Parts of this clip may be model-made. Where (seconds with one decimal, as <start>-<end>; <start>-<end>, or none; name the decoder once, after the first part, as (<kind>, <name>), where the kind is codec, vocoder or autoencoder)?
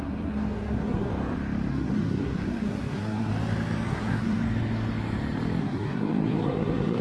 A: 0.0-1.1 (codec, SNAC); 1.7-3.3; 3.9-4.4; 5.6-7.0